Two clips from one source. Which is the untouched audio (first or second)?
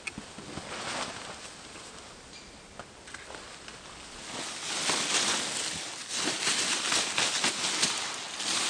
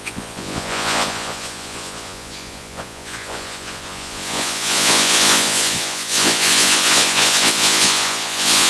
first